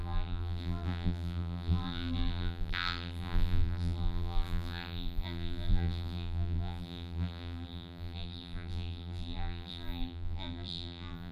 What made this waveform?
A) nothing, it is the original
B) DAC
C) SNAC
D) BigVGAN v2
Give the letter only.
D